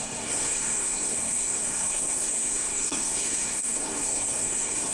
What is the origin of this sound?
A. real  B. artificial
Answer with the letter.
B